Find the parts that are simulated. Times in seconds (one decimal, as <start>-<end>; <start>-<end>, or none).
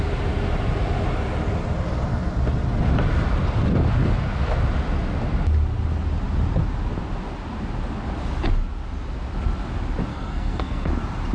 10.1-10.9